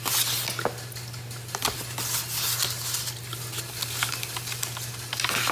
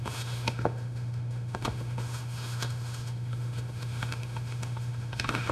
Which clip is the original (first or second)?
first